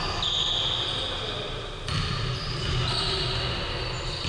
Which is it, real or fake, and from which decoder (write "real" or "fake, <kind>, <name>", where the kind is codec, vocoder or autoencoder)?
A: real